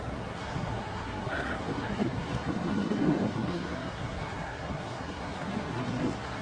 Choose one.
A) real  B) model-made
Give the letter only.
B